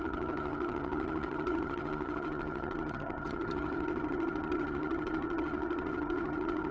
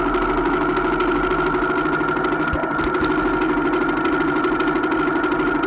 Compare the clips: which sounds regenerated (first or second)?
first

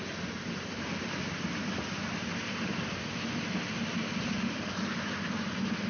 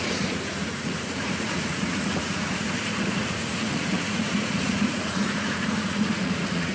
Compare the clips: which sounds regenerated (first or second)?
second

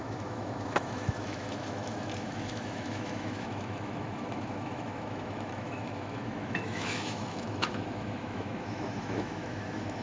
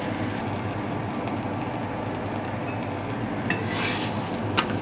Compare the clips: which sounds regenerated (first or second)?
first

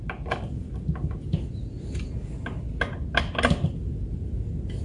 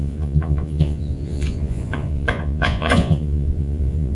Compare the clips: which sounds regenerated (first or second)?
second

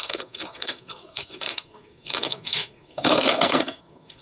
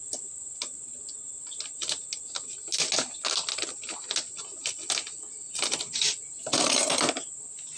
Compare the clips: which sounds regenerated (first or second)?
first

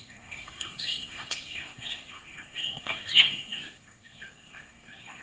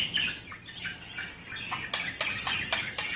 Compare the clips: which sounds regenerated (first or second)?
first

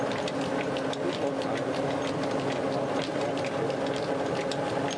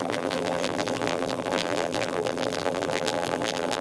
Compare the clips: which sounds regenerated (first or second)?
second